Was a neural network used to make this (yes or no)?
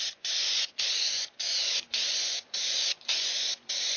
yes